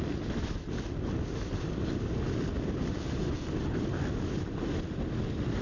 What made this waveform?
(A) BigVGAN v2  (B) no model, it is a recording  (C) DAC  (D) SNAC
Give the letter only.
B